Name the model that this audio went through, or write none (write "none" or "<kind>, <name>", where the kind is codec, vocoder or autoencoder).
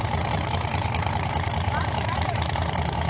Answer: vocoder, BigVGAN v2